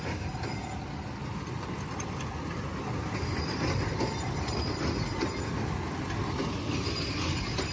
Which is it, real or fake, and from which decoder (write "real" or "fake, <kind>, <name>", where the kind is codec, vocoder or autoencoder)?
real